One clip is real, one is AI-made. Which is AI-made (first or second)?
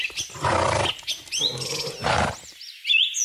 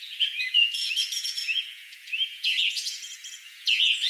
second